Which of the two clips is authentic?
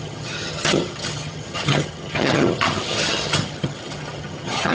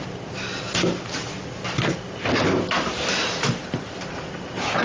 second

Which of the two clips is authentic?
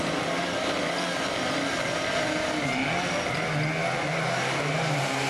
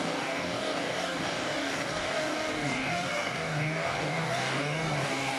first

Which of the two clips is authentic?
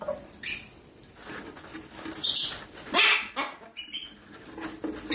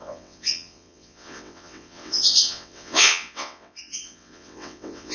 first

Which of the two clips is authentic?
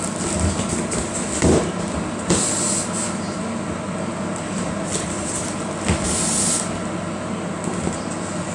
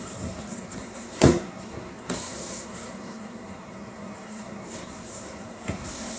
first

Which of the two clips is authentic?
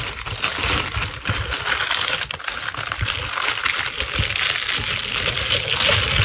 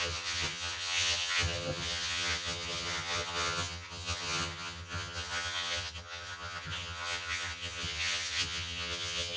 first